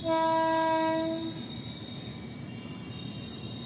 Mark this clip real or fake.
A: real